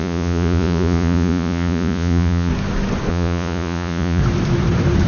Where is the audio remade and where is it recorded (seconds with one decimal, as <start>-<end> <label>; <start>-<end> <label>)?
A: 0.0-2.5 remade; 2.5-3.1 recorded; 3.1-4.2 remade; 4.2-5.1 recorded